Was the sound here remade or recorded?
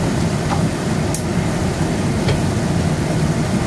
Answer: remade